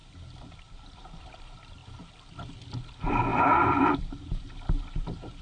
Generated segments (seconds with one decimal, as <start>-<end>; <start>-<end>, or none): 0.0-1.8; 2.8-5.4